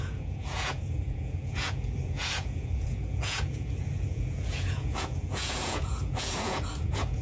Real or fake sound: fake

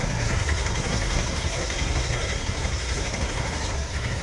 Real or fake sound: fake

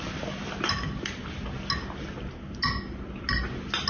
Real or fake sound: real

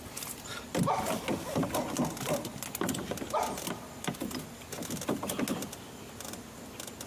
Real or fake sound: real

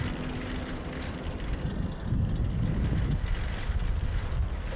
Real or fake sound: real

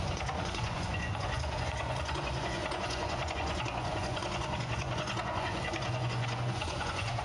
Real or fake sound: fake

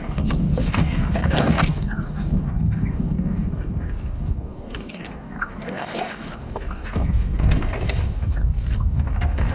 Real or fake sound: fake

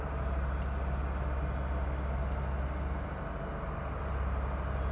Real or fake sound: real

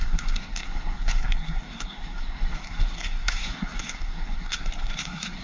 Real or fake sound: fake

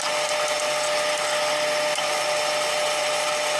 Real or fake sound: real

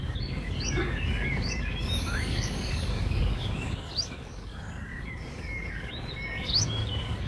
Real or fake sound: fake